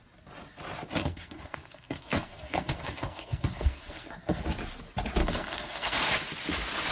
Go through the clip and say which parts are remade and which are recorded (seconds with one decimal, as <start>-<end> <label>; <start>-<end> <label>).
0.0-1.0 recorded; 1.0-4.4 remade; 4.4-5.2 recorded; 5.2-6.0 remade; 6.0-6.9 recorded